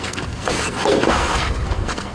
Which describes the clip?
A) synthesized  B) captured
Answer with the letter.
A